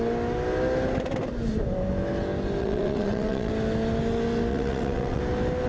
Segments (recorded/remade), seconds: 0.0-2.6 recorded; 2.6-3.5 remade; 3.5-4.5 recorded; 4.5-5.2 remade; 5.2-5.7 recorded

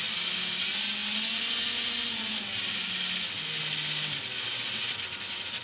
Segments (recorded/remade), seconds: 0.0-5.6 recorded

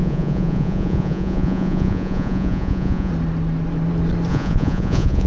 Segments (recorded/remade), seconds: 0.0-3.1 remade; 3.1-4.3 recorded; 4.3-5.3 remade